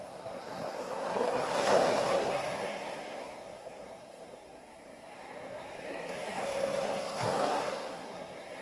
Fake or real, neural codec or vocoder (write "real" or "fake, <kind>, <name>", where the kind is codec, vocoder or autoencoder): fake, codec, SNAC